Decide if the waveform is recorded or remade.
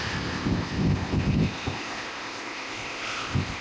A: remade